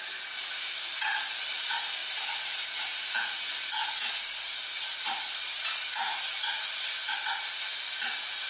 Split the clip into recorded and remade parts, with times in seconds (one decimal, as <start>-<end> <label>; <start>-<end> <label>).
0.0-8.5 recorded